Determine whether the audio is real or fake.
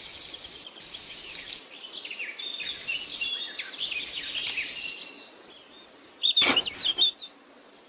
real